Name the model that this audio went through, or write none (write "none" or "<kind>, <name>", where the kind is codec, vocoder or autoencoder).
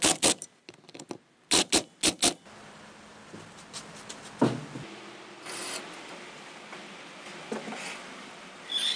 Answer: none